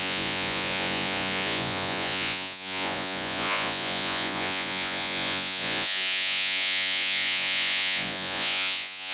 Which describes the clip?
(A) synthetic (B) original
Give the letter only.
A